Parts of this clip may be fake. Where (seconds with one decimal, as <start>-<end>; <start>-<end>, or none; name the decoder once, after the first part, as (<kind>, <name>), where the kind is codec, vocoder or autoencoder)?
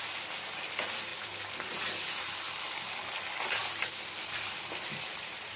0.0-3.6 (vocoder, BigVGAN v2); 4.4-5.6